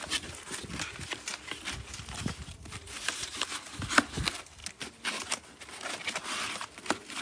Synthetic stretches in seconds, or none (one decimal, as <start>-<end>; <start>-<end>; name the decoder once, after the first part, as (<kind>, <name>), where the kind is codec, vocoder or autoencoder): none